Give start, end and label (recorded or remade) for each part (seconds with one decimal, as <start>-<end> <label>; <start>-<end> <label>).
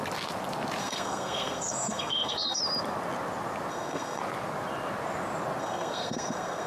0.0-0.8 recorded; 0.8-2.6 remade; 2.6-3.7 recorded; 3.7-4.2 remade; 4.2-5.6 recorded; 5.6-6.7 remade